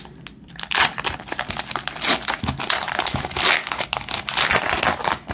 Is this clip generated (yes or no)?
no